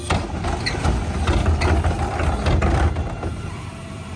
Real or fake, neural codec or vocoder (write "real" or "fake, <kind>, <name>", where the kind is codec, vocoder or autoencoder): real